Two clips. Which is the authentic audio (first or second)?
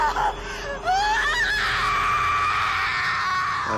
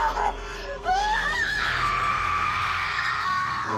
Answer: first